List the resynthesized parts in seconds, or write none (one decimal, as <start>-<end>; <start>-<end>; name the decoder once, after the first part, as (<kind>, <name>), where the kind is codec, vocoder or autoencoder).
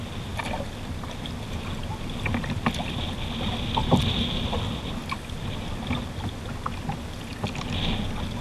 none